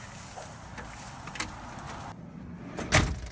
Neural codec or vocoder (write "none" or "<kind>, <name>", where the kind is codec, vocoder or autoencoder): none